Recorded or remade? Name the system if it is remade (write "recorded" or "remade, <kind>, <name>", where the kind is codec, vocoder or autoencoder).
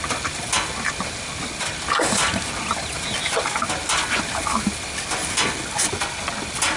recorded